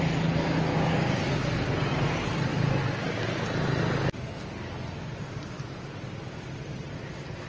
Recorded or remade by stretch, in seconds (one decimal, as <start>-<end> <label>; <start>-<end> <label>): 0.0-0.7 recorded; 0.7-1.2 remade; 1.2-7.5 recorded